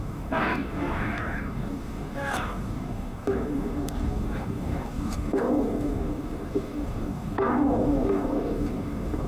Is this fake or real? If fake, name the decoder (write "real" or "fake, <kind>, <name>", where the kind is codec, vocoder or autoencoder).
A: fake, codec, DAC